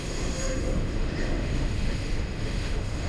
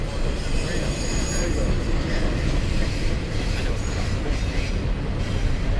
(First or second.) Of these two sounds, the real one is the second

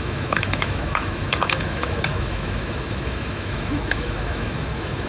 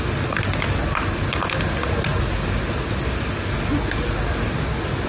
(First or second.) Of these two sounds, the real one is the second